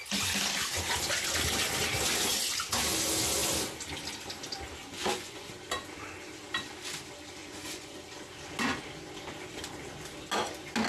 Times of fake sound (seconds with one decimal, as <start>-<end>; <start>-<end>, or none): 4.8-5.5; 7.4-8.0